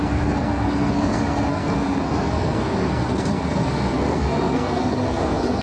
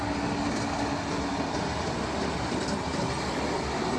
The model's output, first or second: first